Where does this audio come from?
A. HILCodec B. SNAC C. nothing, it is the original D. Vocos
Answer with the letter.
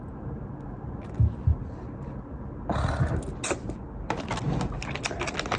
C